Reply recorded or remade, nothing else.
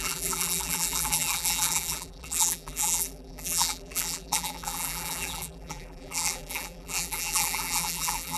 remade